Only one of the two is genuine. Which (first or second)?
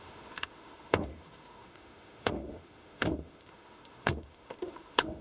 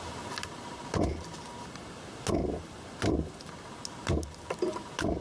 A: second